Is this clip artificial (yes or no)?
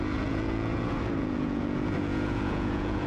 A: yes